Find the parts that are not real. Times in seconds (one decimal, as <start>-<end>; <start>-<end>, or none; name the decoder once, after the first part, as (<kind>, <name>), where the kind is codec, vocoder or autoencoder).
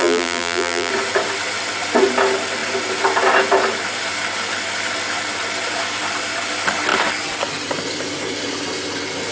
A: 0.0-0.9 (vocoder, BigVGAN v2)